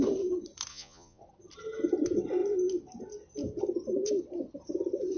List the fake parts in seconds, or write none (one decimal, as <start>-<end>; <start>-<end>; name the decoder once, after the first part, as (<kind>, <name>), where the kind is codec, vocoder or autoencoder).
0.7-1.2 (vocoder, Vocos)

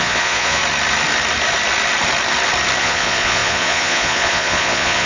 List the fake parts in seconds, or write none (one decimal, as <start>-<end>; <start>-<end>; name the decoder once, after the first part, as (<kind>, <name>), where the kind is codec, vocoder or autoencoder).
0.0-0.6 (vocoder, Vocos); 2.8-5.1

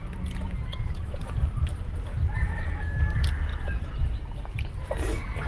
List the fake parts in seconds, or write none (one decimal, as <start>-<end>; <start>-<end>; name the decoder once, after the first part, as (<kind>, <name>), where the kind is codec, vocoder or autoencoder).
0.7-1.3 (vocoder, Vocos); 3.5-4.1

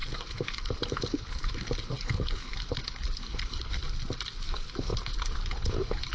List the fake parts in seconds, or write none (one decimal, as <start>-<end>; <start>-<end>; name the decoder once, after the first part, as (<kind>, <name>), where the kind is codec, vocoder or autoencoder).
0.0-3.8 (codec, HILCodec); 4.4-6.1

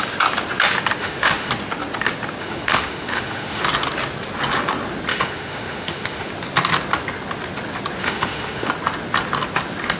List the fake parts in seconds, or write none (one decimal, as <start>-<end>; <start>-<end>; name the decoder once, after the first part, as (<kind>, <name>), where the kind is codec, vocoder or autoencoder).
1.0-1.5 (autoencoder, DAC-VAE); 2.4-3.6; 5.1-6.3; 8.0-8.7

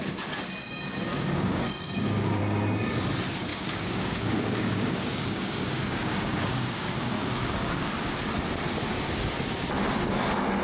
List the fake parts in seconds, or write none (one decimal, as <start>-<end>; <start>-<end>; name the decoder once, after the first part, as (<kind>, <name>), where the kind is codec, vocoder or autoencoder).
1.1-2.4 (codec, DAC); 3.5-7.9

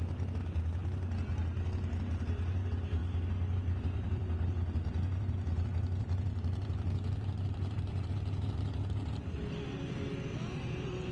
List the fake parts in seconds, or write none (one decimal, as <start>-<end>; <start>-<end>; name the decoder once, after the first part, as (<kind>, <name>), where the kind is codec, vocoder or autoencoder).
3.0-8.1 (vocoder, BigVGAN v2)